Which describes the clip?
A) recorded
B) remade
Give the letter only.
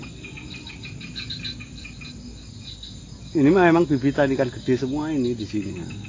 A